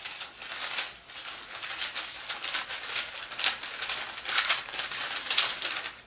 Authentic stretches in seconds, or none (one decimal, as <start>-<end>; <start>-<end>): 0.0-6.1